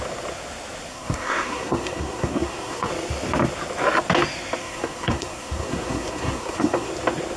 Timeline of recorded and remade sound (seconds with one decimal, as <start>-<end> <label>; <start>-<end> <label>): 0.0-0.9 recorded; 0.9-2.9 remade; 2.9-4.6 recorded; 4.6-6.9 remade; 6.9-7.4 recorded